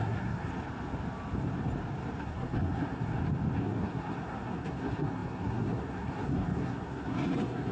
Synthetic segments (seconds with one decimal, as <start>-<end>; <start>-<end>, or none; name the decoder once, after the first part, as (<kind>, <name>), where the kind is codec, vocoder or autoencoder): 0.0-0.5 (codec, SNAC); 2.2-3.1; 3.6-7.7